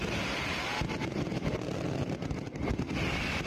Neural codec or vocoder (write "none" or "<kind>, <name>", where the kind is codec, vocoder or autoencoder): none